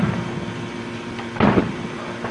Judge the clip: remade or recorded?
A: recorded